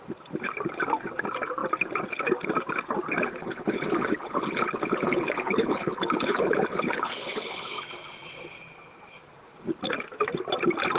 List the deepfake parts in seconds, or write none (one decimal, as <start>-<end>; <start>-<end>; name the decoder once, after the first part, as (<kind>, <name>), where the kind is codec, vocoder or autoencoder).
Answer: 3.4-7.8 (codec, HILCodec)